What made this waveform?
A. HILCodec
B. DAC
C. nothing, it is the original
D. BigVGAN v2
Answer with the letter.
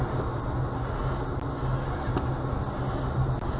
C